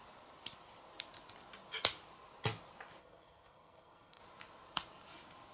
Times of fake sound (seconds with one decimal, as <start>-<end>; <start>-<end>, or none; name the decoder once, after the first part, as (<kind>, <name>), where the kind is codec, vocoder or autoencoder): 3.0-4.2 (codec, SNAC)